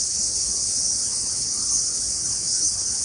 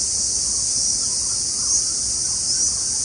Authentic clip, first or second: second